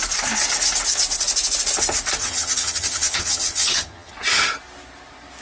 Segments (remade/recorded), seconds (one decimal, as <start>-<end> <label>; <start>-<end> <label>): 0.0-2.2 recorded; 2.2-4.1 remade; 4.1-5.4 recorded